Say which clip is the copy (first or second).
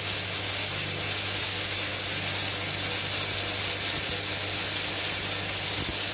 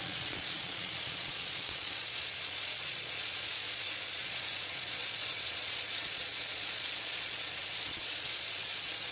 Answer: second